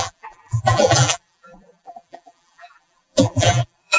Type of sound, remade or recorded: remade